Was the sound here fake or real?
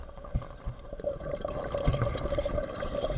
fake